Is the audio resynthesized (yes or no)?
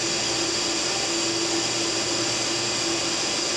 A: no